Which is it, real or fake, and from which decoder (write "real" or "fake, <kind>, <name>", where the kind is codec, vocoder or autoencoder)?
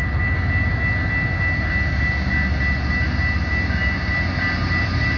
real